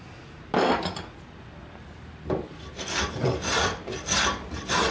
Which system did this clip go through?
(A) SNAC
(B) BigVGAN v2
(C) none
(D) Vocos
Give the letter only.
B